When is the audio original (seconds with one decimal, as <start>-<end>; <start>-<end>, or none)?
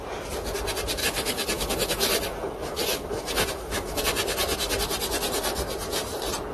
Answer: 0.0-1.0; 4.0-6.5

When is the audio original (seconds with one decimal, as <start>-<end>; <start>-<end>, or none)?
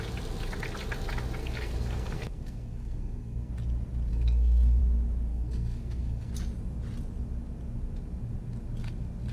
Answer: 0.0-1.4; 3.5-4.1; 4.8-5.3; 6.3-9.3